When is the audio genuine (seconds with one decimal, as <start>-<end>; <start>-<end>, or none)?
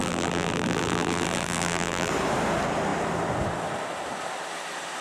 2.1-5.0